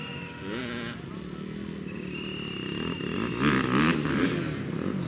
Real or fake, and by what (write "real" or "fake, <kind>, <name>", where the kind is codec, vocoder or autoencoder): real